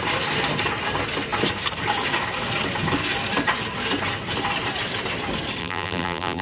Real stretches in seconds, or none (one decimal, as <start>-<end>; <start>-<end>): 0.0-5.6